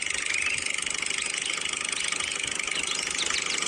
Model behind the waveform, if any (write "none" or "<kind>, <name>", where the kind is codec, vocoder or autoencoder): none